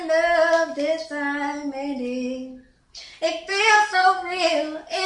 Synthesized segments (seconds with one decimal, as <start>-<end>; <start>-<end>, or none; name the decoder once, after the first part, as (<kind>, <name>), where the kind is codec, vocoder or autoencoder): 3.5-4.4 (codec, SNAC)